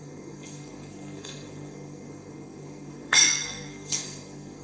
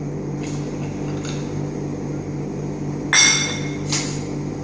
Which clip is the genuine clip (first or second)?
second